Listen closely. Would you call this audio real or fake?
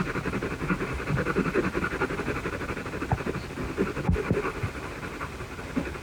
real